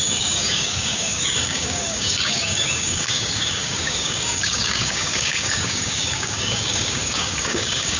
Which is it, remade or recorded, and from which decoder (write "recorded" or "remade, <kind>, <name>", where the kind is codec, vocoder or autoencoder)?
remade, codec, DAC